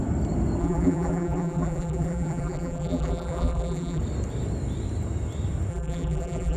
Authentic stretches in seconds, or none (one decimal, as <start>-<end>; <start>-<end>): 0.0-0.6; 4.0-5.7

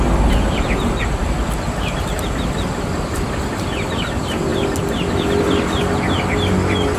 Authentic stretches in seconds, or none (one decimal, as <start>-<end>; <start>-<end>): 0.0-7.0

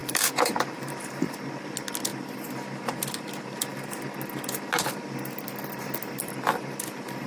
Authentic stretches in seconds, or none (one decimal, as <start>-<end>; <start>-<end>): 1.0-7.3

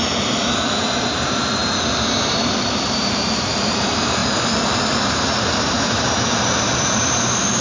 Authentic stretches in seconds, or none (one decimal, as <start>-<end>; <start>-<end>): 1.6-2.2; 4.2-5.0

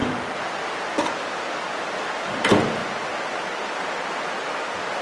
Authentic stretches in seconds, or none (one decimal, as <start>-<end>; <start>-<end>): 2.8-4.2

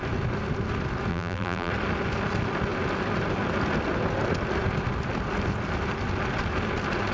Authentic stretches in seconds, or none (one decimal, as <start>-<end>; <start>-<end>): 0.0-1.1; 1.7-7.1

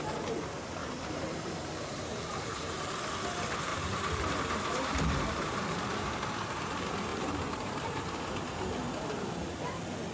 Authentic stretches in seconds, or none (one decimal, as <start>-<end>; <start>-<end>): 0.0-0.8; 2.8-3.7; 6.1-7.1; 8.6-10.1